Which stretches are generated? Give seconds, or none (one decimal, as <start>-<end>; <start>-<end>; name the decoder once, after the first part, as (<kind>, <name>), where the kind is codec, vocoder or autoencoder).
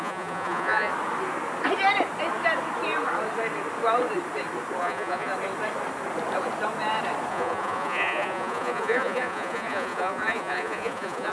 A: 0.0-0.9 (vocoder, Vocos); 4.8-5.3; 7.3-11.3